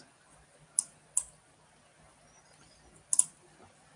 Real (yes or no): yes